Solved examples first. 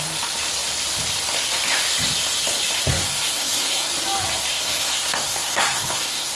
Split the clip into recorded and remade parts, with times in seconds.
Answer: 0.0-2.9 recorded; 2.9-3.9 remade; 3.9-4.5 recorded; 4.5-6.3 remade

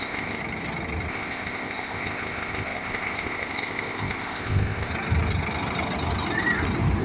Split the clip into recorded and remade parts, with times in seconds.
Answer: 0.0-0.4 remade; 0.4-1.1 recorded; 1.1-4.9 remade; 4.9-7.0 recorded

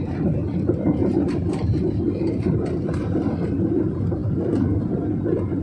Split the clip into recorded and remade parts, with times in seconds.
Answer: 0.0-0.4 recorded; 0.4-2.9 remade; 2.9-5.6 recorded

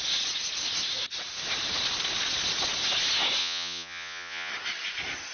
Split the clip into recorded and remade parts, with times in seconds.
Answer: 0.0-3.4 recorded; 3.4-4.5 remade; 4.5-5.3 recorded

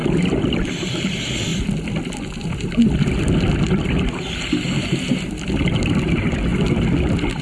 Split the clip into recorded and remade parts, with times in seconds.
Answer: 0.0-7.4 recorded

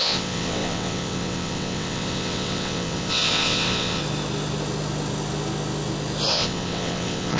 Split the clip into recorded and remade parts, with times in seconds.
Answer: 0.0-4.0 remade; 4.0-6.3 recorded; 6.3-7.4 remade

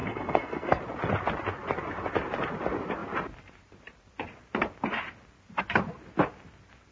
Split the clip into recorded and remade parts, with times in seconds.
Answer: 0.0-0.8 remade; 0.8-6.9 recorded